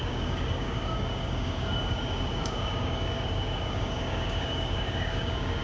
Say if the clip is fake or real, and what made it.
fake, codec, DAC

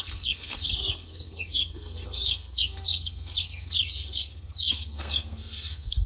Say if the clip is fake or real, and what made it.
fake, codec, SNAC